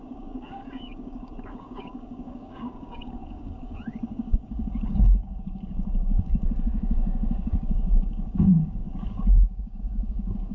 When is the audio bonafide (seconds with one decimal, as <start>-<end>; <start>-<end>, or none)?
none